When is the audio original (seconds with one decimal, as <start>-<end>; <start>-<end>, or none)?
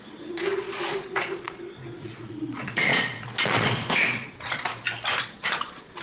4.7-5.2